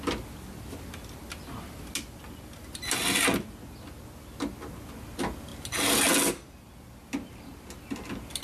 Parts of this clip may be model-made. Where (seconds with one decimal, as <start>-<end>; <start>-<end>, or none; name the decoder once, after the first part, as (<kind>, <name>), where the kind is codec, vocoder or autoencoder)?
none